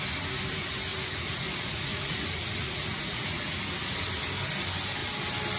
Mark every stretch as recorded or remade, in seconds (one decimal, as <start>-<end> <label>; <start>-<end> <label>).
0.0-0.9 recorded; 0.9-3.6 remade; 3.6-5.6 recorded